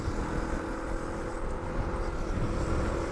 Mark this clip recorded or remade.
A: recorded